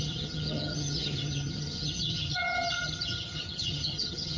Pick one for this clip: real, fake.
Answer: fake